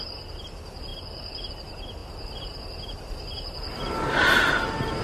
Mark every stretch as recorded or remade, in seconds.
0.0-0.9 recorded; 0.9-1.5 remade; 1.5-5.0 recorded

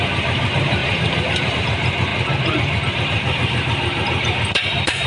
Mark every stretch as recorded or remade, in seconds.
0.0-2.1 remade; 2.1-2.9 recorded; 2.9-5.1 remade

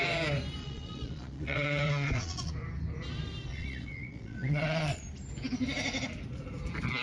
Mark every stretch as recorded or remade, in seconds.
0.0-0.6 recorded; 0.6-2.5 remade; 2.5-3.5 recorded; 3.5-5.0 remade; 5.0-7.0 recorded

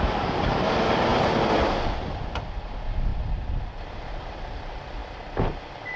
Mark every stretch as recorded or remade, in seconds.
0.0-6.0 recorded

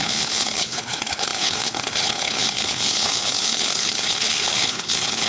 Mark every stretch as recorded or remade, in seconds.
0.0-5.3 remade